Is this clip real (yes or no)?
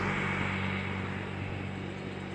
yes